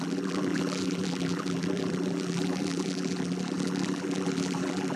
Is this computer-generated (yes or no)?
yes